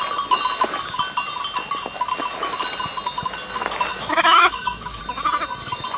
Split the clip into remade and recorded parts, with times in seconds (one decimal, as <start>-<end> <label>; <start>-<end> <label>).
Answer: 0.0-3.9 recorded; 3.9-5.0 remade; 5.0-6.0 recorded